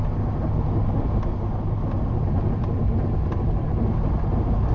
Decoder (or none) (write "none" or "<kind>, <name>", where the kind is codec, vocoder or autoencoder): none